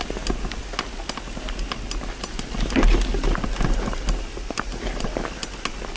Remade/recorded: recorded